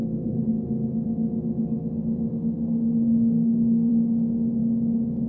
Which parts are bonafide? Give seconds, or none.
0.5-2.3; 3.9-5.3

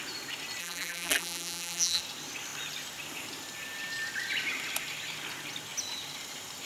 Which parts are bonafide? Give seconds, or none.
0.0-0.6; 2.0-6.7

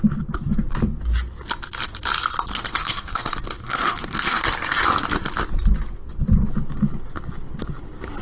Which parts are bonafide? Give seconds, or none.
0.0-2.5; 3.2-3.6; 4.4-8.2

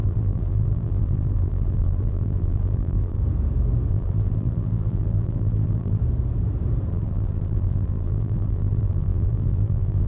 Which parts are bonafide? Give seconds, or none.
3.2-3.9; 6.0-6.9

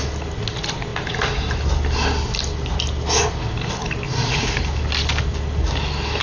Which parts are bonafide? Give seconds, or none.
0.0-6.2